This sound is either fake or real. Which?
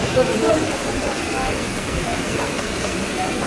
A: fake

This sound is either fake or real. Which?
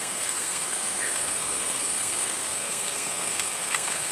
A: fake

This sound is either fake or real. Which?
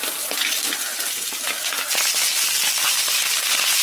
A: real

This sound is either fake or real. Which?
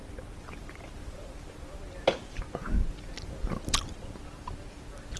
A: real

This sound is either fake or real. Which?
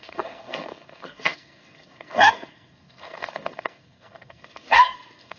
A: fake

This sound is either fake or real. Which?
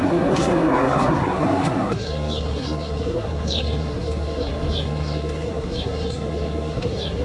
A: fake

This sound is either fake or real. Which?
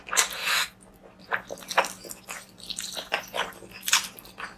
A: real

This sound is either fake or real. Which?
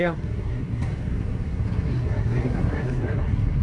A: fake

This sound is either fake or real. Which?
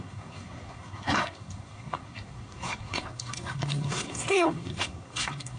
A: fake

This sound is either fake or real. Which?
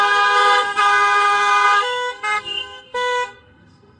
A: fake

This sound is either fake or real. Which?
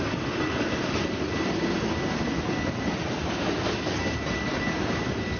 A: real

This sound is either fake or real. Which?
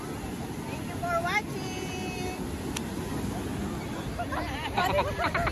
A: real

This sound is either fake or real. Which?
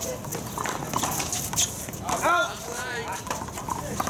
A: real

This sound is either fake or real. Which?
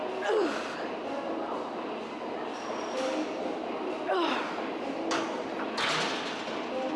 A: real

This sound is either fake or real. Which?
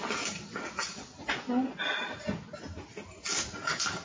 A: real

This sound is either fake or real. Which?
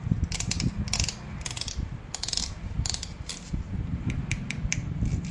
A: real